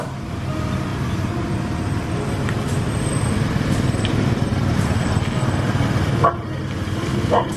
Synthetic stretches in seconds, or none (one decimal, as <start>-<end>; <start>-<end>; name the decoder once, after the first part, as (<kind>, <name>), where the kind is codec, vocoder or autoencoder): none